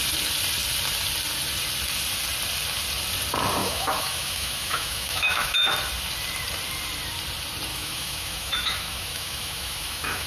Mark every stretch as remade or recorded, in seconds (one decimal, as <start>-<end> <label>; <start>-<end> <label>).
0.0-3.6 recorded; 3.6-5.7 remade; 5.7-7.7 recorded; 7.7-10.3 remade